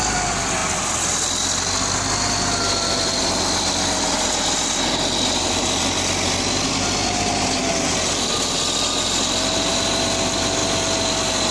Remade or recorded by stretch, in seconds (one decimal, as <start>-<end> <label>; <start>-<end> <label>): 0.0-11.5 recorded